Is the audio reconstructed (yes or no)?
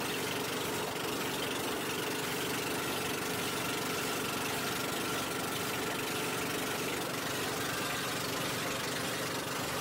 no